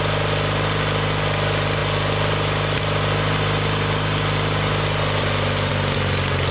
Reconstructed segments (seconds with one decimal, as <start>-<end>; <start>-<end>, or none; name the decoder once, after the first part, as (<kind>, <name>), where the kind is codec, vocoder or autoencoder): none